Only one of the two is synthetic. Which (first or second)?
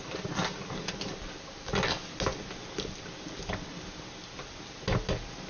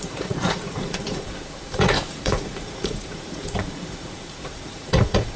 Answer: second